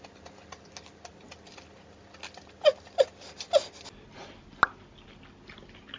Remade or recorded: recorded